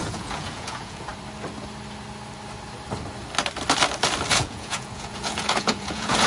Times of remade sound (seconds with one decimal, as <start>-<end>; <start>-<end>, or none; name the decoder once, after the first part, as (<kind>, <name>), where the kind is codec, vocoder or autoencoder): 0.0-1.1 (vocoder, Vocos); 4.3-6.3